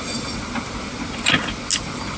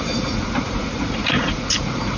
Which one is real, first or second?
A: first